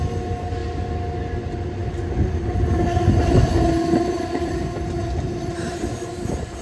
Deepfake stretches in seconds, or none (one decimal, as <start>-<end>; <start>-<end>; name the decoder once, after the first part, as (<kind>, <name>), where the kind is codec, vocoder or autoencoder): none